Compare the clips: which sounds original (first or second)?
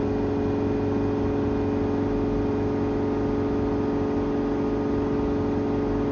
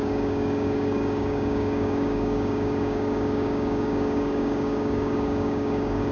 first